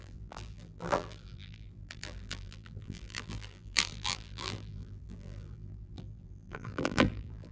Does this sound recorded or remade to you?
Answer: remade